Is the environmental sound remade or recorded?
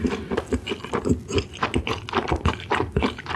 recorded